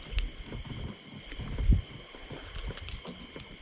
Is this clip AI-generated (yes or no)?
no